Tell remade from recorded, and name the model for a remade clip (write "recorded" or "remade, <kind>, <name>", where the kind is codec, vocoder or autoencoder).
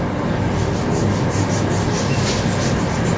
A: recorded